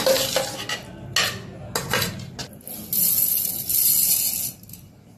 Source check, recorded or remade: recorded